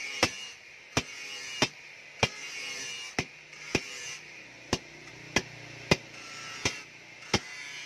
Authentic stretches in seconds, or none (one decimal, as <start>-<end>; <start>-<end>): 0.0-7.9